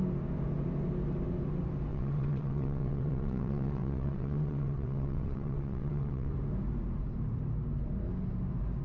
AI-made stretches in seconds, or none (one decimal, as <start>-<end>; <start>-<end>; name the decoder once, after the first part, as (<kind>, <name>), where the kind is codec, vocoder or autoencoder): 1.9-6.3 (vocoder, WaveNeXt)